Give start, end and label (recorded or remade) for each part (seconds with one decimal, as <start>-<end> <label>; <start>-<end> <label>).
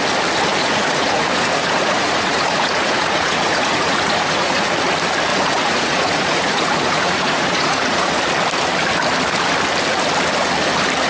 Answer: 0.0-0.5 recorded; 0.5-4.7 remade; 4.7-5.3 recorded; 5.3-8.1 remade; 8.1-11.1 recorded